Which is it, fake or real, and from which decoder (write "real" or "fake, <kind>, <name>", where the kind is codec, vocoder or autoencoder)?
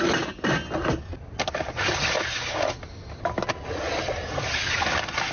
real